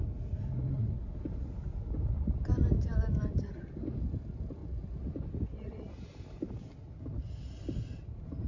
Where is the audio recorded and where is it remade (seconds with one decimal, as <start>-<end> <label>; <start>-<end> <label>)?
0.0-8.5 recorded